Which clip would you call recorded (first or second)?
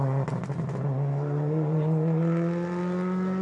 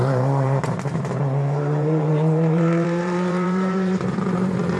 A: first